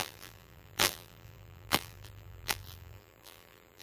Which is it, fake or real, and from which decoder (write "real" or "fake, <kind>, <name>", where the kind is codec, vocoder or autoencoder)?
fake, vocoder, BigVGAN v2